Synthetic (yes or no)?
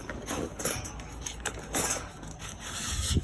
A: yes